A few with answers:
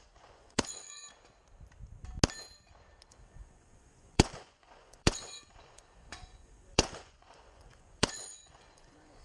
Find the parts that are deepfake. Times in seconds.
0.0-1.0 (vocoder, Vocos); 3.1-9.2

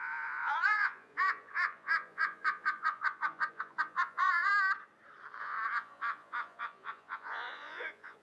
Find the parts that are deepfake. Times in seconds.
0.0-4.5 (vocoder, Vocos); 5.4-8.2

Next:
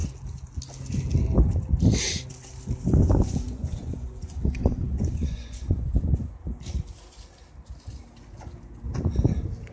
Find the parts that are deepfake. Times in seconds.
3.0-6.3 (vocoder, Vocos)